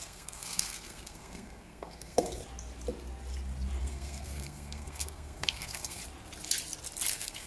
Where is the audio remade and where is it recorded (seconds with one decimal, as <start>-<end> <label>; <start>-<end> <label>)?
0.0-2.4 remade; 2.4-3.8 recorded; 3.8-6.0 remade; 6.0-7.1 recorded; 7.1-7.5 remade